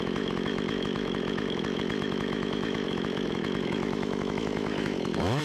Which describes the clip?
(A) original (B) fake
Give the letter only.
B